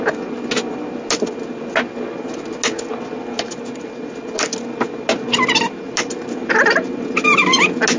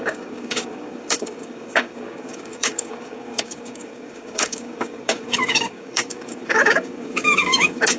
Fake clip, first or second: second